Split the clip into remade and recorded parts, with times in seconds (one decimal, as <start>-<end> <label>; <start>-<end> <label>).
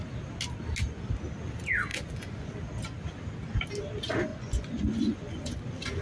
0.0-1.9 recorded; 1.9-2.5 remade; 2.5-4.3 recorded; 4.3-5.6 remade; 5.6-6.0 recorded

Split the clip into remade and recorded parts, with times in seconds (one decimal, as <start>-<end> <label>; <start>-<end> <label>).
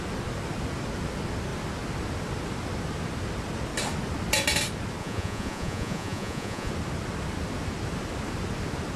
0.0-5.0 recorded; 5.0-6.7 remade; 6.7-9.0 recorded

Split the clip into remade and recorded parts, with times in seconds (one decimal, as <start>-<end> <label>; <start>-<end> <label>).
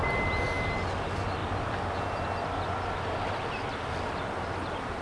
0.0-5.0 recorded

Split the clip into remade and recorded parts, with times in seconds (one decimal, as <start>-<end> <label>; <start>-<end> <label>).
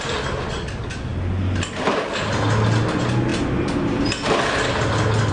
0.0-5.3 recorded